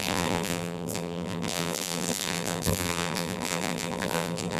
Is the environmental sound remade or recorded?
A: remade